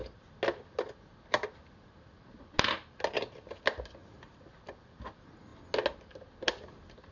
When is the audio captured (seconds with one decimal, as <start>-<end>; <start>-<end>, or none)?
0.0-4.0; 5.1-7.1